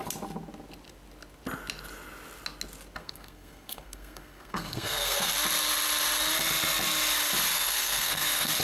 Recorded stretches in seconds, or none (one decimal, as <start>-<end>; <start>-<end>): 0.0-3.0; 5.3-7.5

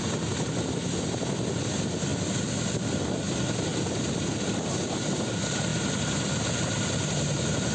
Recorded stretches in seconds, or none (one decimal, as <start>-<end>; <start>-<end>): 0.0-7.7

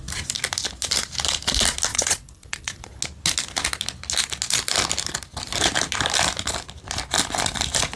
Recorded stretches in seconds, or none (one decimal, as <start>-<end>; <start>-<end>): 0.0-1.9; 3.0-8.0

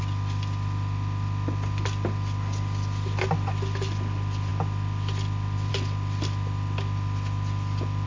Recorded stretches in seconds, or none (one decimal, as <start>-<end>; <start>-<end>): 0.0-8.1

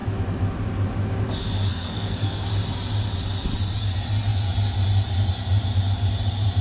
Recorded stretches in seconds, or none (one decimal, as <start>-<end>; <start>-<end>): 0.0-1.7; 2.5-6.6